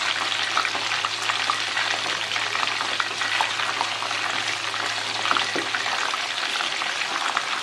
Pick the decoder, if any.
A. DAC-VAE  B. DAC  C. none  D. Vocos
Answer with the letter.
C